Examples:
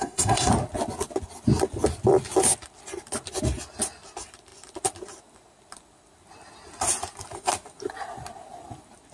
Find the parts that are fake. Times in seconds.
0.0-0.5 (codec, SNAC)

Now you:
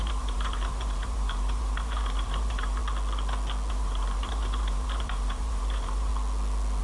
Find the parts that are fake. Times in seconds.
0.0-2.8 (vocoder, BigVGAN v2); 3.7-6.1

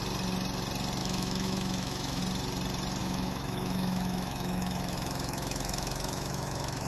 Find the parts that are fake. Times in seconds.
1.0-2.2 (autoencoder, DAC-VAE); 3.0-6.9

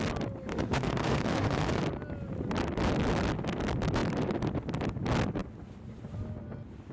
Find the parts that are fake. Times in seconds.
0.5-1.8 (autoencoder, DAC-VAE)

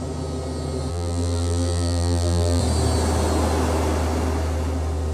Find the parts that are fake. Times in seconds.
0.9-2.6 (vocoder, BigVGAN v2)

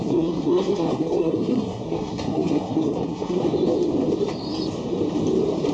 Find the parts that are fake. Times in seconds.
0.0-3.4 (codec, SNAC)